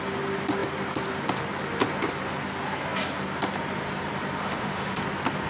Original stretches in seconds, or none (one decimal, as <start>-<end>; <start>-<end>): 0.0-4.4; 5.0-5.5